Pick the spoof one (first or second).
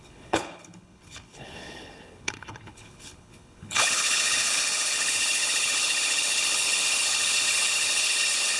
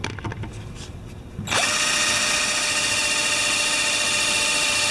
first